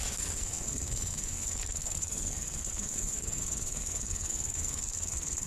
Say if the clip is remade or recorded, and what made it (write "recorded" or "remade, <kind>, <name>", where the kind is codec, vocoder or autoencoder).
remade, codec, SNAC